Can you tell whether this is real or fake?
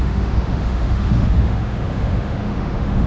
fake